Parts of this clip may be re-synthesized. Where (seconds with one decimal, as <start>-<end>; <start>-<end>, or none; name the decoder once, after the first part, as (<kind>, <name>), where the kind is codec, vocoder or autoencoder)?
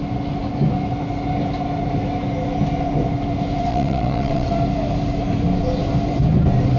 3.7-4.5 (vocoder, WaveNeXt)